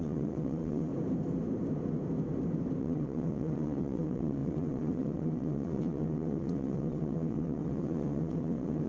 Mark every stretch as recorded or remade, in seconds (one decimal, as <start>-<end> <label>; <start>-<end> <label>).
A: 0.0-0.9 remade; 0.9-2.8 recorded; 2.8-8.9 remade